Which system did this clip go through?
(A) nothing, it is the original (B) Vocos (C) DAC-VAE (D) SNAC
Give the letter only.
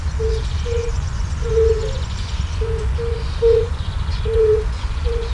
B